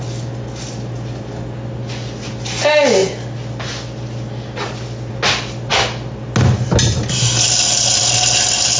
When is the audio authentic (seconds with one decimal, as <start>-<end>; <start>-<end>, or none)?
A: 0.0-8.8